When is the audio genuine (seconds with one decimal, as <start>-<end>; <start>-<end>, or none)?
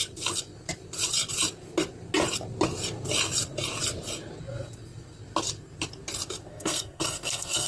0.0-6.5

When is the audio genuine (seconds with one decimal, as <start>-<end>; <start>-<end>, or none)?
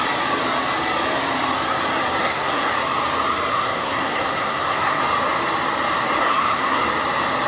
0.0-2.2; 2.7-3.5; 5.0-6.2; 6.8-7.5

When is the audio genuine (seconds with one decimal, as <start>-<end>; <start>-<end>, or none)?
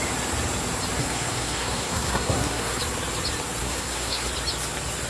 0.0-1.0; 2.8-3.6; 4.3-5.1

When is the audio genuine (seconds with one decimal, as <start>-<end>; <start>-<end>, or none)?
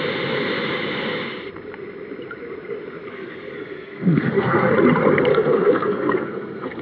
0.0-3.1; 4.7-5.3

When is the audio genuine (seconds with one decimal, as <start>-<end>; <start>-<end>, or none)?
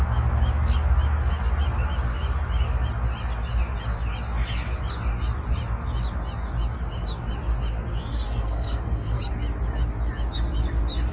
0.0-8.1; 9.3-11.1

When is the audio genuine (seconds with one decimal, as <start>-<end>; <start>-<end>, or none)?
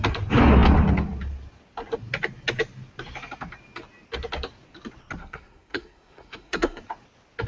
0.0-5.2; 6.8-7.5